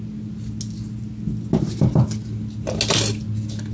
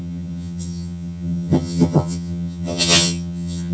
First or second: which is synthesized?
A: second